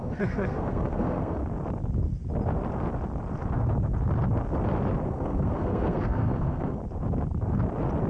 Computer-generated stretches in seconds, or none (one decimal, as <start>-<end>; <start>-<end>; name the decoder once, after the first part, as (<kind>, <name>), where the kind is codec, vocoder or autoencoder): 0.0-1.4 (codec, SNAC); 5.1-6.8